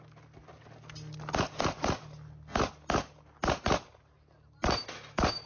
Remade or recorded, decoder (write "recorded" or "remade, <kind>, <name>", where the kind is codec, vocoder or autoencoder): recorded